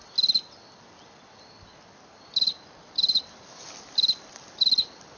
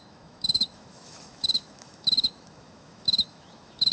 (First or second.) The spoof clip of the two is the second